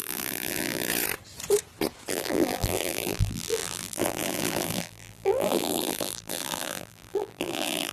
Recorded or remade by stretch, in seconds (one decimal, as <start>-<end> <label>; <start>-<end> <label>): 0.0-0.9 remade; 0.9-2.1 recorded; 2.1-7.9 remade